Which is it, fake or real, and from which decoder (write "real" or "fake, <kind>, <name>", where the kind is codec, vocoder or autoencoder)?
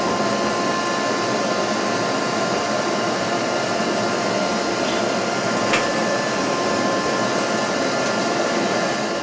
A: real